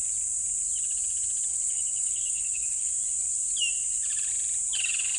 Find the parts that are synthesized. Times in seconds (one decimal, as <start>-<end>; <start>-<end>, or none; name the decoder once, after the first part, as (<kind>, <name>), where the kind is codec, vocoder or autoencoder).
1.5-2.9 (codec, HILCodec)

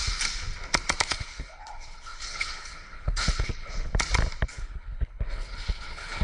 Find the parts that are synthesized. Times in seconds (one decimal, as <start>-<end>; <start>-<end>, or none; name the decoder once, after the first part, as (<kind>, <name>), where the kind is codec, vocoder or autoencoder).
1.0-3.9 (codec, HILCodec); 4.5-6.2

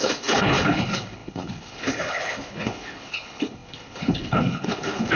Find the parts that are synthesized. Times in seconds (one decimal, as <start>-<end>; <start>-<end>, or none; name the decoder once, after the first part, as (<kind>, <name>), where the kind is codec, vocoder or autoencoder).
0.0-5.2 (codec, HILCodec)

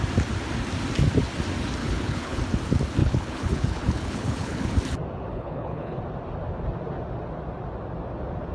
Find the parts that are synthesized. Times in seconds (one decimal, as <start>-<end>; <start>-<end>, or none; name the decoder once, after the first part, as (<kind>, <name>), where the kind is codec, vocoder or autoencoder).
1.8-2.4 (codec, HILCodec); 3.0-4.7; 5.3-6.0